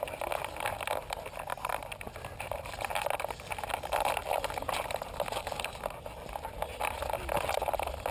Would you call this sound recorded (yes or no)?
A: yes